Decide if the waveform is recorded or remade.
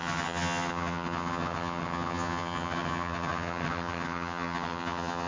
remade